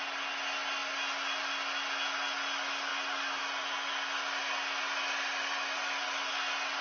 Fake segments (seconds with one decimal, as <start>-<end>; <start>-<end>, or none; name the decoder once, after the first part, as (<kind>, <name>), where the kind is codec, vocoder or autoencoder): none